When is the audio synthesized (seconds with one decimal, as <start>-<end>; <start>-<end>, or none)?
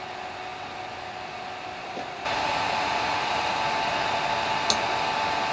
1.8-3.6